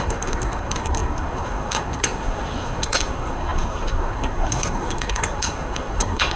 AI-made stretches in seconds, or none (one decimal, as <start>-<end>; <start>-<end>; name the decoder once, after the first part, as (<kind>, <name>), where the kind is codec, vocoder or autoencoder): 0.0-6.4 (codec, SNAC)